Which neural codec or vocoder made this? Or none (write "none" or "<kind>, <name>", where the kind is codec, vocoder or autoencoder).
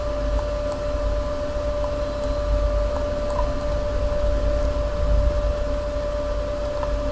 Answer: none